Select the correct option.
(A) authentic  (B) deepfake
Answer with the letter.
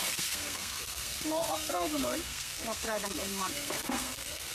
B